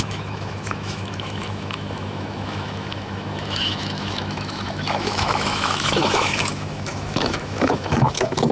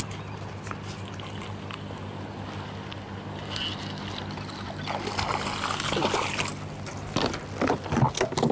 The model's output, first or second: first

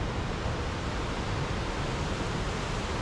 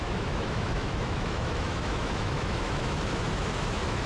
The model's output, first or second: second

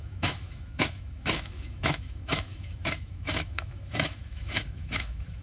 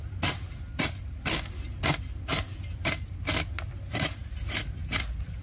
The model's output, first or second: first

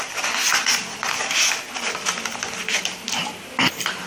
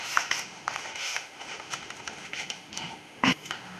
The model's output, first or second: second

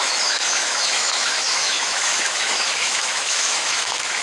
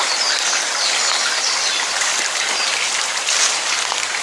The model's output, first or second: first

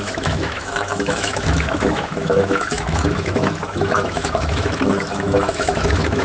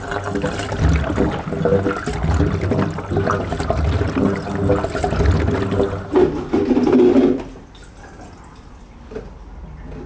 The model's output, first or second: first